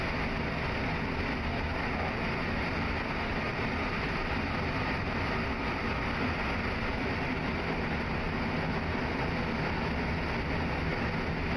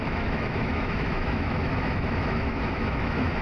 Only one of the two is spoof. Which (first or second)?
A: second